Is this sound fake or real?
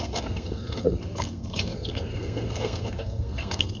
fake